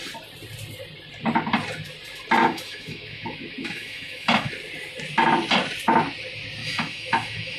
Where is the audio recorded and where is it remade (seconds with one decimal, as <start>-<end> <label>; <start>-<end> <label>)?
0.0-2.4 recorded; 2.4-4.5 remade; 4.5-6.6 recorded; 6.6-7.6 remade